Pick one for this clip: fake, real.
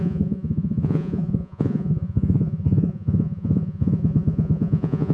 fake